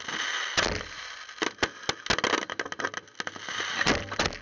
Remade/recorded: recorded